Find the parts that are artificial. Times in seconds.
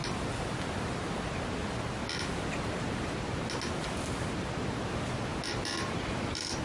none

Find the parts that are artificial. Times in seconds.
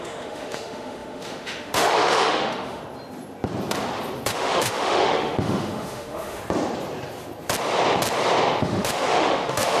0.0-2.8 (autoencoder, DAC-VAE); 4.3-6.4; 8.6-9.8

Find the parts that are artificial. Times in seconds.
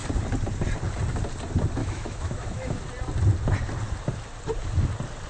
1.8-2.7 (autoencoder, DAC-VAE)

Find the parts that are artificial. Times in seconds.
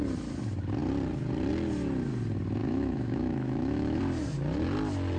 2.6-4.0 (autoencoder, DAC-VAE)